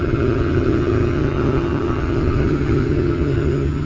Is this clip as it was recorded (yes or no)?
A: no